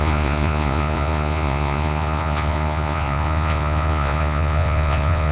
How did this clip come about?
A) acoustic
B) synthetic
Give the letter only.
B